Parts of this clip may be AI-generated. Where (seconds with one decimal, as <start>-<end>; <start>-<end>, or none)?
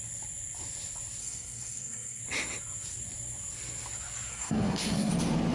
1.2-2.2; 4.3-5.1